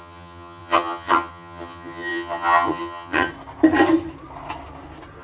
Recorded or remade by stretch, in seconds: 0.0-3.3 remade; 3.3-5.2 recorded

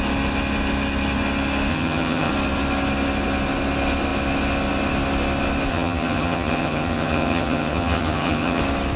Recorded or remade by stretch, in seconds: 0.0-1.7 recorded; 1.7-2.3 remade; 2.3-5.7 recorded; 5.7-8.6 remade; 8.6-9.0 recorded